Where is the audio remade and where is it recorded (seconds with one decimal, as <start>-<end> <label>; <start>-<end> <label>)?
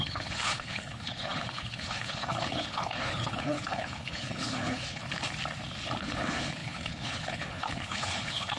0.0-5.0 remade; 5.0-6.0 recorded; 6.0-8.6 remade